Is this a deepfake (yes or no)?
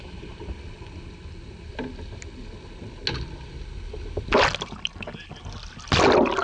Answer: no